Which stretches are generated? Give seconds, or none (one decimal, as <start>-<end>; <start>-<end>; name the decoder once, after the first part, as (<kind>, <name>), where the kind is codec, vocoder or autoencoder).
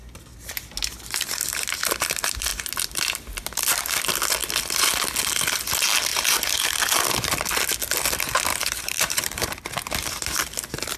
6.1-6.8 (vocoder, BigVGAN v2); 8.5-9.5